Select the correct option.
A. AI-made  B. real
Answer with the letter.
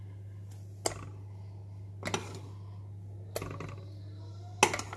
B